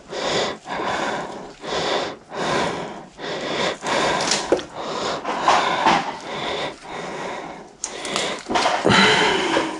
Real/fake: real